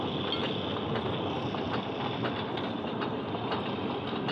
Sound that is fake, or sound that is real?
real